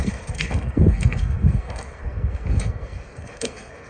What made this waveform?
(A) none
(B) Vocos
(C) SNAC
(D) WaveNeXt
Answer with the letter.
C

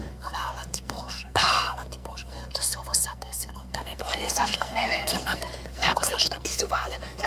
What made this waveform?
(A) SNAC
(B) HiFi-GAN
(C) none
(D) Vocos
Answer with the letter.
A